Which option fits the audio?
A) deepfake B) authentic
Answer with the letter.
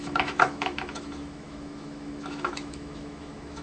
A